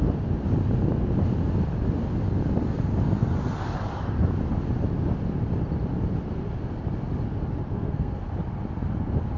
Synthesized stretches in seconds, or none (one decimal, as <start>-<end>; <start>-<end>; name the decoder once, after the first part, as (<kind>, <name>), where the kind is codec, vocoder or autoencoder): 7.7-8.2 (codec, SNAC)